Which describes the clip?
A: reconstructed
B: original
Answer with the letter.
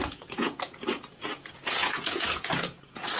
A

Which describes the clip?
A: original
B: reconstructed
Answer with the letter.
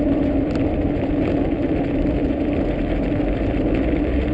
A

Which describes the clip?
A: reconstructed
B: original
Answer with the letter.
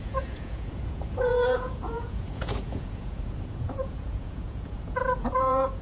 A